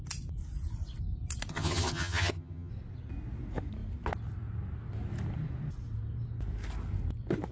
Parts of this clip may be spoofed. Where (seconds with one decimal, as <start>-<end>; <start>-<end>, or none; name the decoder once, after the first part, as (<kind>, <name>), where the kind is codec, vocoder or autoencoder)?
1.5-2.7 (vocoder, HiFi-GAN)